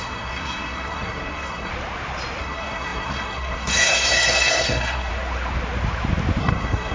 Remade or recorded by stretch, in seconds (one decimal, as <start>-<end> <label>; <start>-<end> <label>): 0.0-1.7 remade; 1.7-2.4 recorded; 2.4-5.1 remade; 5.1-6.4 recorded; 6.4-6.9 remade